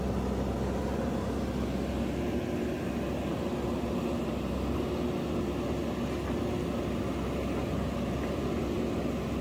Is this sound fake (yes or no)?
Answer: no